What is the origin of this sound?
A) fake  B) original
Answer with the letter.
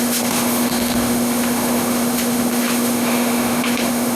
A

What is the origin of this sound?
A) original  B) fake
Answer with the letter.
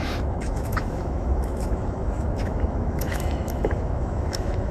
B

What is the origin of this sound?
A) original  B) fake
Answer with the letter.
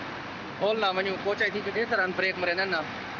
A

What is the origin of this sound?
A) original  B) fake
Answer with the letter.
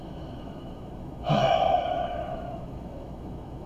B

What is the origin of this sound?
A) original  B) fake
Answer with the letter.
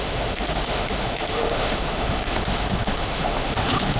B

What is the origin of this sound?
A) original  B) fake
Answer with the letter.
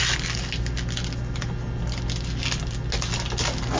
A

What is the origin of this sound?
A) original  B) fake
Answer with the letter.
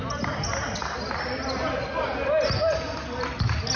A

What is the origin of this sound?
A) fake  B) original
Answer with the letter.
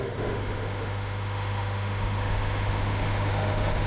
A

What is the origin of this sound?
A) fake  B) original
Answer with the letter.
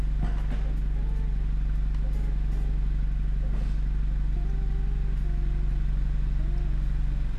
B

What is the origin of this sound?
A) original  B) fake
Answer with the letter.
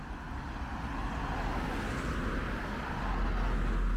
A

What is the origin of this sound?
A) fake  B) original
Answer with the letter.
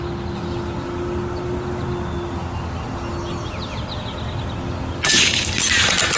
B